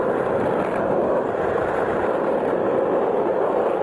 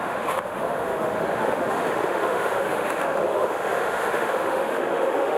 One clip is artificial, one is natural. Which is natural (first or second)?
first